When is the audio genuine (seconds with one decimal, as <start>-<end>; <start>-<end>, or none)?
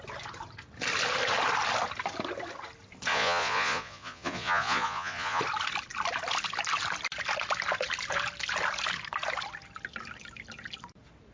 0.0-3.1; 5.4-11.3